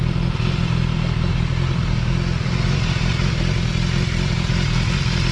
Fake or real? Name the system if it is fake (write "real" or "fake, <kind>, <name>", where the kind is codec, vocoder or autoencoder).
real